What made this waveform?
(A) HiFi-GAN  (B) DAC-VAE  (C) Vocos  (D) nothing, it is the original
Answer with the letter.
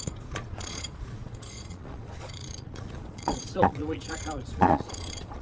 C